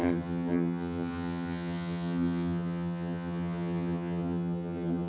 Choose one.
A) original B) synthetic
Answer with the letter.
B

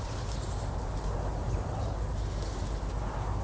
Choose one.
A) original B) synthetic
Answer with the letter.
A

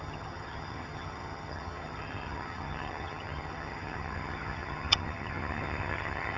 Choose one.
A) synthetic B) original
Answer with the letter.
A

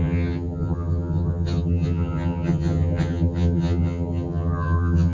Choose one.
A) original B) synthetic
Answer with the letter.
B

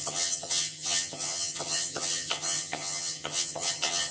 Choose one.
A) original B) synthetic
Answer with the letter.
B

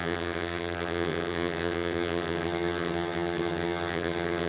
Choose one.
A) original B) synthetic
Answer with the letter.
B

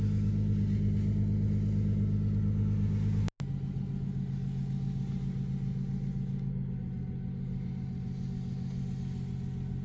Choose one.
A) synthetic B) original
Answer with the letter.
B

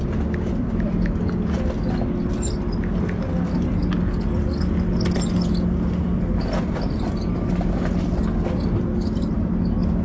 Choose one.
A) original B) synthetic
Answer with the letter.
A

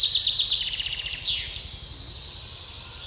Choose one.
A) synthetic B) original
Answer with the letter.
B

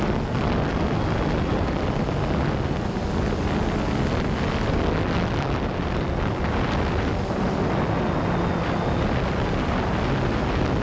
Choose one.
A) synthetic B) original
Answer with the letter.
B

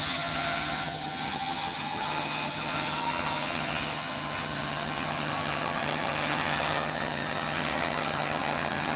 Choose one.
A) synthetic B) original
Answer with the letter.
A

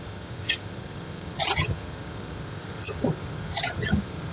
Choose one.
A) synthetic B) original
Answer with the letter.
A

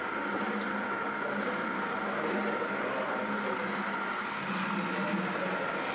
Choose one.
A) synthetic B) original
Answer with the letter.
B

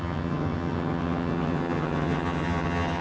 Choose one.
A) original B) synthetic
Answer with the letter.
B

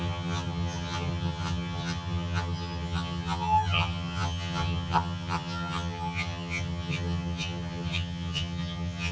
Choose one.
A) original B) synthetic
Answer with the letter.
B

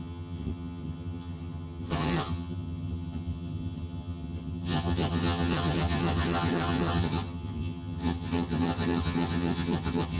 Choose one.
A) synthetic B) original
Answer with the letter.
A